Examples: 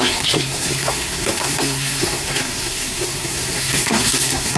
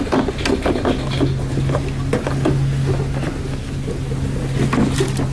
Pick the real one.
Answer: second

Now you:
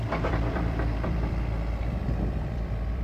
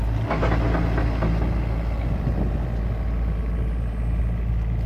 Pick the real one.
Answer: second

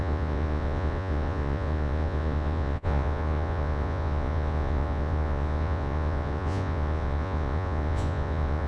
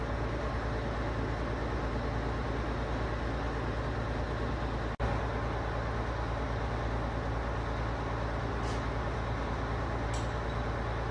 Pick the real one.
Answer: second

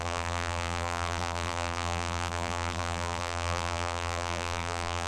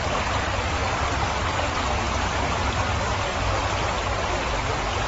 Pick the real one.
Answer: second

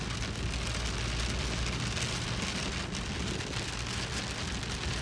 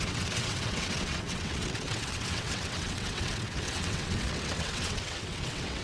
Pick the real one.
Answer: first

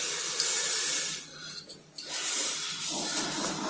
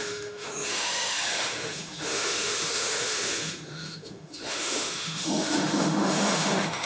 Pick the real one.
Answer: first